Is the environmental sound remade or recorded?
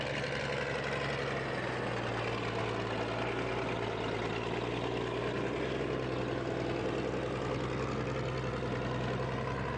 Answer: recorded